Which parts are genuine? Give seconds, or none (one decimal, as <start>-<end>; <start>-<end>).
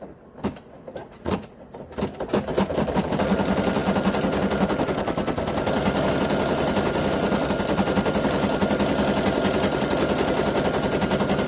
0.0-1.0; 1.8-11.5